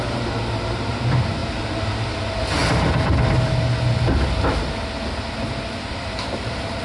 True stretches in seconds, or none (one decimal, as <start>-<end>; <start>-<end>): 2.6-5.9